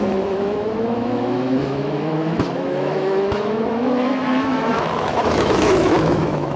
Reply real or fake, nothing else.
fake